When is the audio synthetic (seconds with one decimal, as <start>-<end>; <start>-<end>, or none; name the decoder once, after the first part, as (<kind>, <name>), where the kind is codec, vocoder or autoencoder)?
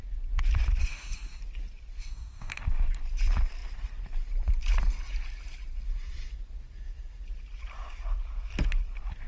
0.8-1.4 (codec, DAC); 2.0-2.6